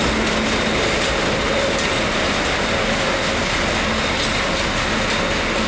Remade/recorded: recorded